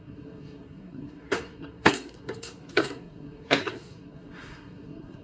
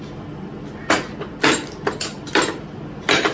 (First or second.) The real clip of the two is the second